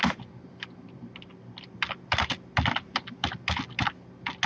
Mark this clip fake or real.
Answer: real